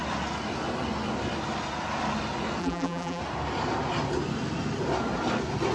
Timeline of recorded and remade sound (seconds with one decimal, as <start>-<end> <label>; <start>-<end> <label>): 0.0-2.6 recorded; 2.6-3.2 remade; 3.2-5.7 recorded